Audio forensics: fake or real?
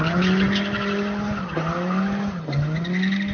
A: real